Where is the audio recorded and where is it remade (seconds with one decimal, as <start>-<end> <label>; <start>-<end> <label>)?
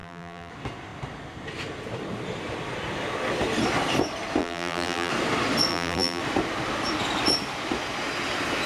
0.0-0.5 remade; 0.5-4.4 recorded; 4.4-5.1 remade; 5.1-5.7 recorded; 5.7-6.2 remade; 6.2-8.7 recorded